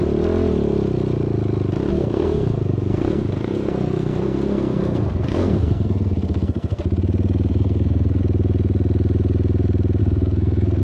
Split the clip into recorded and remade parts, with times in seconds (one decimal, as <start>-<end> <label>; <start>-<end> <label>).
0.0-1.9 recorded; 1.9-6.8 remade; 6.8-7.5 recorded; 7.5-8.2 remade; 8.2-10.0 recorded; 10.0-10.8 remade